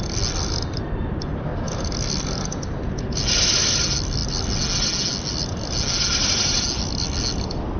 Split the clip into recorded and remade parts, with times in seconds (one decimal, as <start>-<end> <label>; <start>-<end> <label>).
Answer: 0.0-7.8 recorded